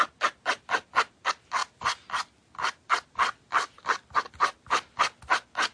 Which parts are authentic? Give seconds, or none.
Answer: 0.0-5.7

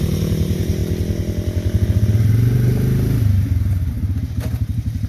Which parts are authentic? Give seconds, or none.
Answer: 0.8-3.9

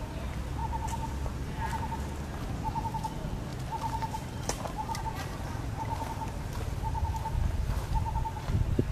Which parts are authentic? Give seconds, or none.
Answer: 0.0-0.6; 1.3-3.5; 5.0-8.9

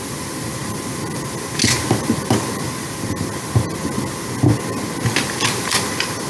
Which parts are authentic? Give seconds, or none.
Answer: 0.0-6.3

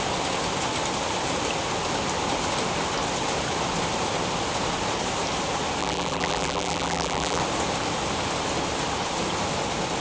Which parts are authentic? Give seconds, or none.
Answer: 0.0-5.8; 7.4-10.0

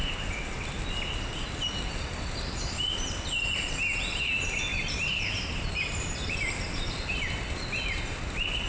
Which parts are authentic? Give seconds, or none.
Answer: 0.0-4.7; 6.4-8.7